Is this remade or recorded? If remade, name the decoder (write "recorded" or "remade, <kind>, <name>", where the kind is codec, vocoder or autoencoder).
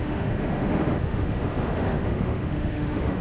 remade, autoencoder, DAC-VAE